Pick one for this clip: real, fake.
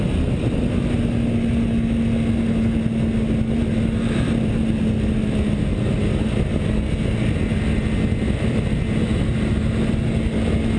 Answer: real